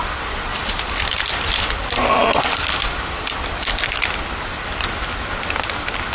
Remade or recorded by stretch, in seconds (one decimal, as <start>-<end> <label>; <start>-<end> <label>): 0.0-0.5 recorded; 0.5-4.2 remade; 4.2-6.1 recorded